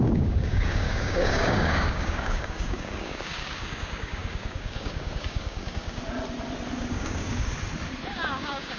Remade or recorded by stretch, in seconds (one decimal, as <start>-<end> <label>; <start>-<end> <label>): 0.0-6.0 remade; 6.0-6.9 recorded; 6.9-7.5 remade; 7.5-8.1 recorded; 8.1-8.8 remade